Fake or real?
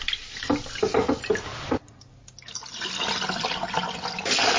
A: real